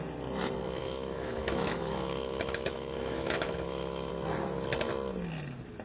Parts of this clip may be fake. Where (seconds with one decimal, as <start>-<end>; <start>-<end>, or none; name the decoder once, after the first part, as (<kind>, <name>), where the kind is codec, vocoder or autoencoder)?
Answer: 0.8-4.1 (autoencoder, DAC-VAE)

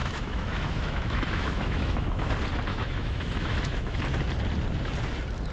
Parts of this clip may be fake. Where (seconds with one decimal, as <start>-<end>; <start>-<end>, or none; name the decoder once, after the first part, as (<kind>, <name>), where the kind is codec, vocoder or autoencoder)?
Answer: 0.0-2.3 (autoencoder, DAC-VAE); 2.7-4.0

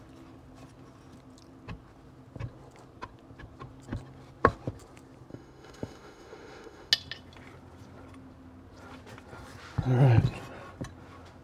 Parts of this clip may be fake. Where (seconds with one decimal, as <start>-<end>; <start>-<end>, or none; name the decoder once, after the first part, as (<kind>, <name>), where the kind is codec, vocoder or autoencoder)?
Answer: 5.3-6.9 (autoencoder, DAC-VAE)

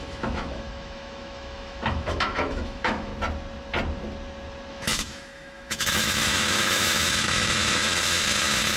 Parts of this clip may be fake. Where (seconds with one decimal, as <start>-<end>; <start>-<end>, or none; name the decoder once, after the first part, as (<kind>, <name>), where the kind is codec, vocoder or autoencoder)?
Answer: 0.0-3.1 (autoencoder, DAC-VAE); 4.7-8.8

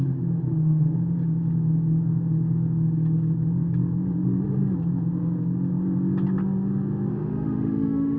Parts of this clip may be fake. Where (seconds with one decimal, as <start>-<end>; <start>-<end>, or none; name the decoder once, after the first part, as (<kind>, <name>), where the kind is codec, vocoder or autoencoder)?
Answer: 7.1-8.2 (autoencoder, DAC-VAE)

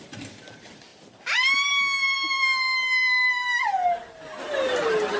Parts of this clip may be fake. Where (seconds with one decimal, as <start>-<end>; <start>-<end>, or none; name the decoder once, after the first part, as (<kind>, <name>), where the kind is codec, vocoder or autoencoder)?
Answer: none

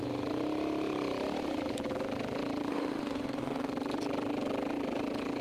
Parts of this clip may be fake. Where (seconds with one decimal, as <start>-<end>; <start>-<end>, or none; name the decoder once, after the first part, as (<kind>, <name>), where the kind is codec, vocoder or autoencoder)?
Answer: 2.7-3.7 (autoencoder, DAC-VAE)

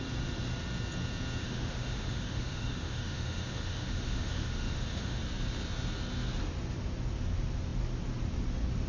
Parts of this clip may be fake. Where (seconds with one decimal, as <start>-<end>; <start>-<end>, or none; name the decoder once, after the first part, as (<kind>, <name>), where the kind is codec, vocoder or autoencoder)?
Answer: 1.4-5.2 (autoencoder, DAC-VAE)